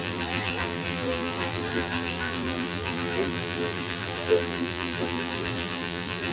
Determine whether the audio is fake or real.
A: fake